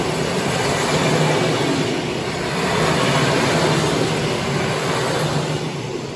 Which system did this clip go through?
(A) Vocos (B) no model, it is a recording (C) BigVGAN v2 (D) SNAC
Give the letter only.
B